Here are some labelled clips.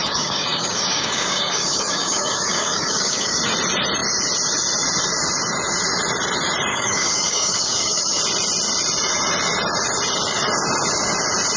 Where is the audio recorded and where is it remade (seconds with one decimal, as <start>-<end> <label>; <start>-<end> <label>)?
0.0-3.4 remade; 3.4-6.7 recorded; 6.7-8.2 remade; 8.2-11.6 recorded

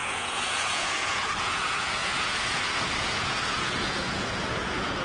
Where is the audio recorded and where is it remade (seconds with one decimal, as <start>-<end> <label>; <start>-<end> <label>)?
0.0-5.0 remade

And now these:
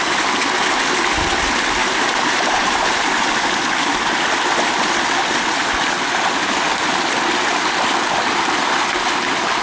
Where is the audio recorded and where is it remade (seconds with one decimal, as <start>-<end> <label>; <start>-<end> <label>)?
0.0-1.8 recorded; 1.8-3.2 remade; 3.2-9.6 recorded

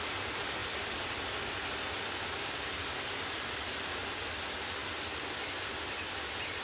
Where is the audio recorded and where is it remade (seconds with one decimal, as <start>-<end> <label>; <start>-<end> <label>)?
0.0-6.6 recorded

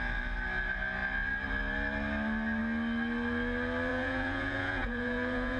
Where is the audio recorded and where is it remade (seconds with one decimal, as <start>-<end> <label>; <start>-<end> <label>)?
0.0-3.9 recorded; 3.9-5.6 remade

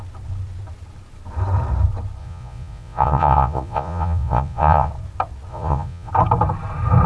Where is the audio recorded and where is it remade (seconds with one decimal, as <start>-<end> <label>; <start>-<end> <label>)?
0.0-2.2 recorded; 2.2-4.9 remade; 4.9-5.5 recorded; 5.5-6.1 remade; 6.1-7.1 recorded

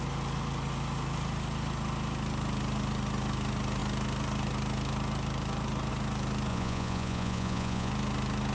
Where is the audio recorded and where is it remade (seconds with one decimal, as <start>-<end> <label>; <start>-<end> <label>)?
0.0-6.5 recorded; 6.5-7.9 remade; 7.9-8.5 recorded